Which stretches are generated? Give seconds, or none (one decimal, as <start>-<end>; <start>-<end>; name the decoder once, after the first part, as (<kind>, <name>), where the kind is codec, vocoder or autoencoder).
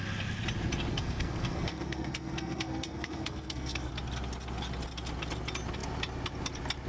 0.9-3.9 (codec, SNAC)